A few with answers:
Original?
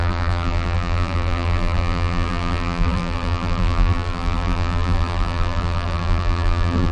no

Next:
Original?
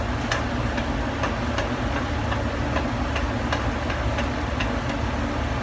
yes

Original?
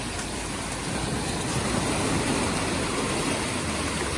no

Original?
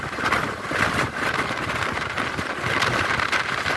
yes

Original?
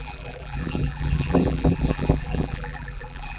no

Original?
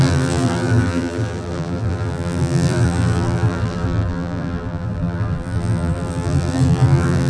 no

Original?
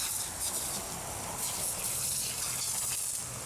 yes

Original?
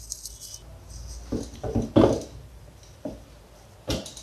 yes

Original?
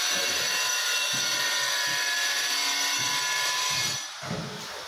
yes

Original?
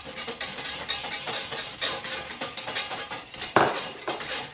no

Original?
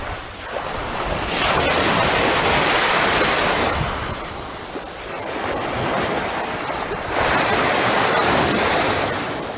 no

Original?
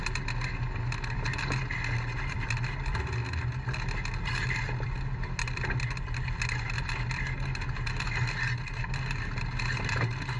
yes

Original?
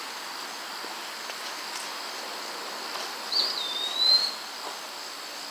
yes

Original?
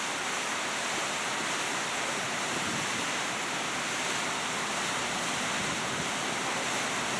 no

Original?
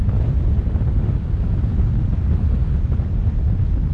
yes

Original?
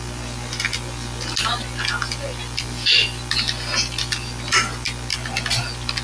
yes